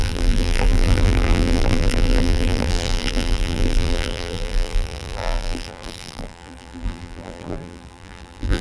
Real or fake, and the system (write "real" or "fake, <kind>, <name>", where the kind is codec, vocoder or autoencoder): fake, vocoder, BigVGAN v2